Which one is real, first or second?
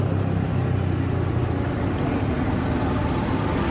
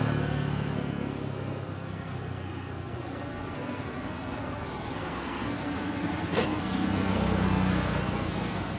first